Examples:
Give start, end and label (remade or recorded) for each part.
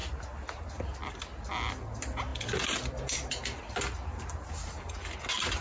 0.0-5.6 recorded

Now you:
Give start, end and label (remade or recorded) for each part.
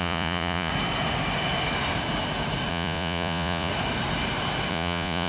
0.0-0.7 remade; 0.7-2.7 recorded; 2.7-3.7 remade; 3.7-4.7 recorded; 4.7-5.3 remade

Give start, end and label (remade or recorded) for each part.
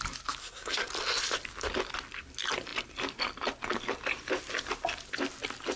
0.0-0.4 recorded; 0.4-0.9 remade; 0.9-5.8 recorded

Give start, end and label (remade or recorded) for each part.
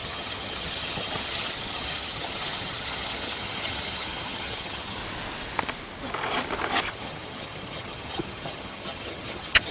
0.0-5.0 remade; 5.0-6.9 recorded; 6.9-9.7 remade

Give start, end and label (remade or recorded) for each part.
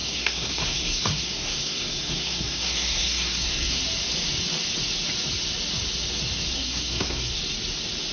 0.0-3.8 remade; 3.8-6.5 recorded; 6.5-7.4 remade; 7.4-8.1 recorded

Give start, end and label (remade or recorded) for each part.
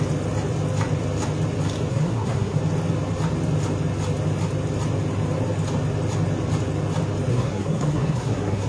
0.0-1.9 recorded; 1.9-2.6 remade; 2.6-7.3 recorded; 7.3-8.7 remade